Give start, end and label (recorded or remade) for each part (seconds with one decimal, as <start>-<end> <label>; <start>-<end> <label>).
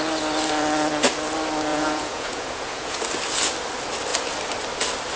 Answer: 0.0-1.7 recorded; 1.7-3.0 remade; 3.0-5.2 recorded